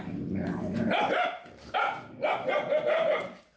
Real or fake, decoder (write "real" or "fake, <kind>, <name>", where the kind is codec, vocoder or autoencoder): real